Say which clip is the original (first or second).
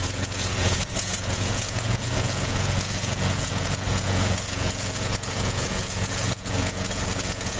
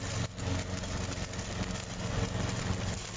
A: second